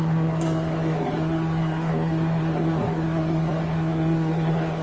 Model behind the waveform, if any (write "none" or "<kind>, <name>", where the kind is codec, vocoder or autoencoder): codec, SNAC